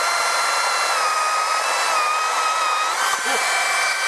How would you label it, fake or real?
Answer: real